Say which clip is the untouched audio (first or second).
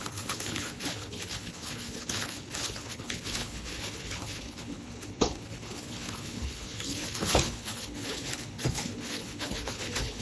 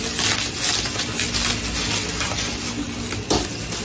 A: second